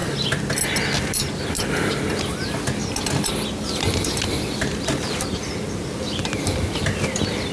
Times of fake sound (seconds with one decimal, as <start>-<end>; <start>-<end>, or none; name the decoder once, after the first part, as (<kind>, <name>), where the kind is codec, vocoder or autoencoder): none